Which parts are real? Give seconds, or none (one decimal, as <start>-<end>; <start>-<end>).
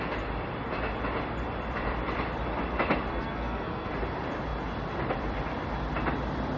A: 0.0-3.1; 3.9-6.6